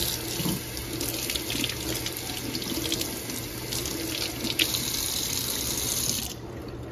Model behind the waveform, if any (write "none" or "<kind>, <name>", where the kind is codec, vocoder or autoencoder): none